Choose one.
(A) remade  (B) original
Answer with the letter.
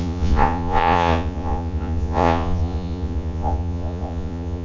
A